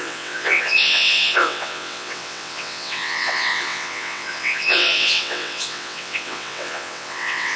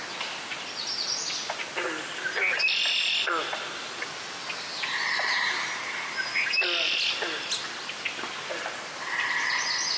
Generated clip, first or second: first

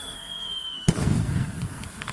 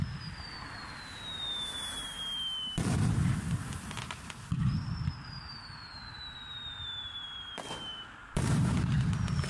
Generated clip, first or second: first